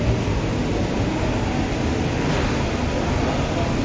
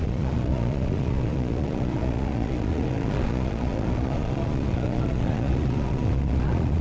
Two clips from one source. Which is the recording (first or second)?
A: first